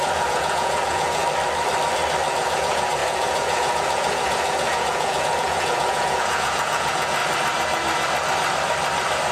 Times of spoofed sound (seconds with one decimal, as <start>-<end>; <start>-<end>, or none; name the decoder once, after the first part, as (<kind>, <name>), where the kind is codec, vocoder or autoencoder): 0.0-1.2 (vocoder, Vocos); 2.3-7.2